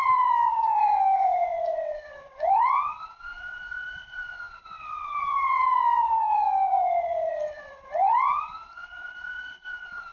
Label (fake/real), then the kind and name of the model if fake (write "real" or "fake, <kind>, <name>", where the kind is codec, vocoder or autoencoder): fake, vocoder, WaveNeXt